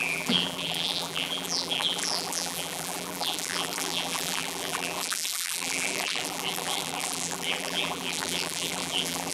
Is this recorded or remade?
remade